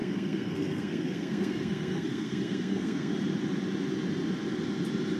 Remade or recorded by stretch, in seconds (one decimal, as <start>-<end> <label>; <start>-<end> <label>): 0.0-3.1 remade; 3.1-5.2 recorded